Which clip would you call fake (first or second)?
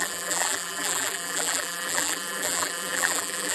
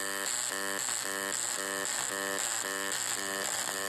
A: first